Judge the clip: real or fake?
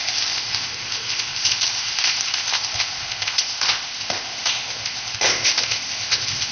fake